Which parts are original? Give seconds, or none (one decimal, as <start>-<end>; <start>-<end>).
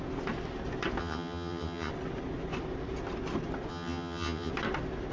0.0-1.0; 1.9-3.7; 4.5-5.1